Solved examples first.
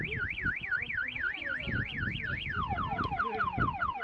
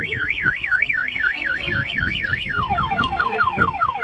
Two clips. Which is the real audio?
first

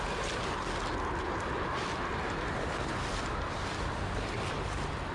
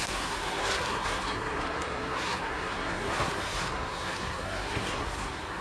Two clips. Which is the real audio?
first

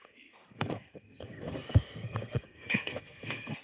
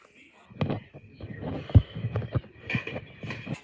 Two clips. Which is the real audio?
second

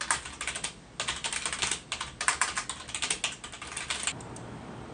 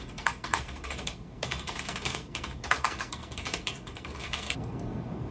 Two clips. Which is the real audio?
first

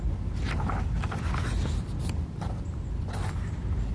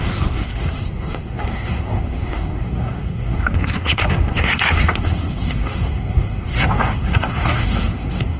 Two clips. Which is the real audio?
first